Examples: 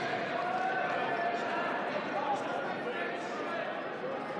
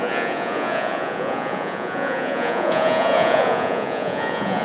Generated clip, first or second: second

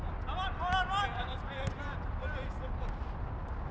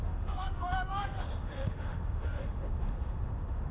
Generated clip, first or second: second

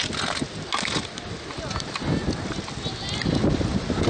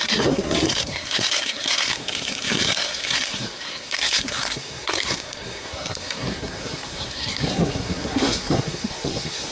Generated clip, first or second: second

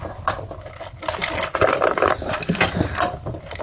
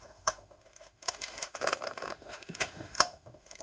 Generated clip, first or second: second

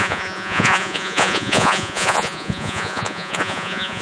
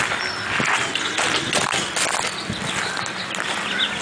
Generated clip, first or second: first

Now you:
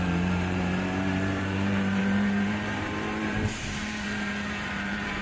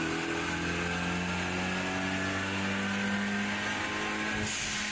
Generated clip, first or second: first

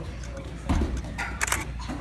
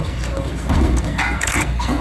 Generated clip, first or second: second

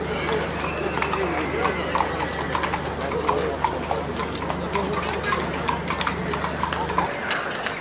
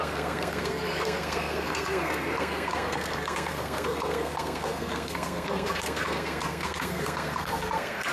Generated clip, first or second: second